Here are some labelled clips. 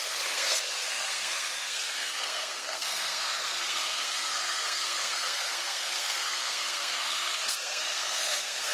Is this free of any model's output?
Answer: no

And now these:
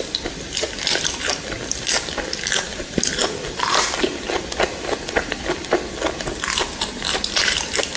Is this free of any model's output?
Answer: yes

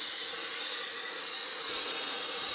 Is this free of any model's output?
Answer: no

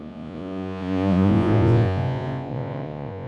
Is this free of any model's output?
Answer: no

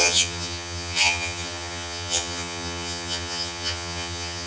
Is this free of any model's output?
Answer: no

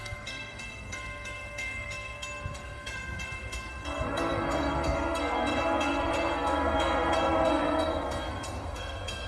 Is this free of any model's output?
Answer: no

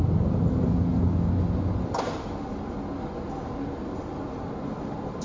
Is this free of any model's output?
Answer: yes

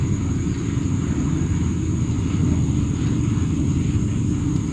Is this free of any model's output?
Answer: yes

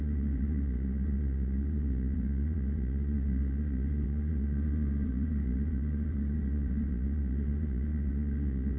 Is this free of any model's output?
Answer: no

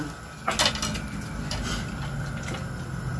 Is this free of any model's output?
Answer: yes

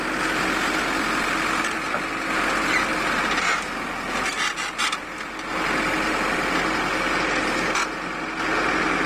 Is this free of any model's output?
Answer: yes